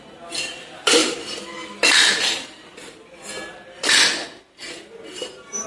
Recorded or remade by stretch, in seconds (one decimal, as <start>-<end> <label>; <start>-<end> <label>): 0.0-5.7 recorded